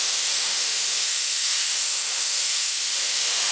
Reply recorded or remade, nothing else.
remade